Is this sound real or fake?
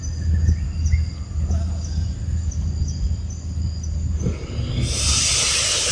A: real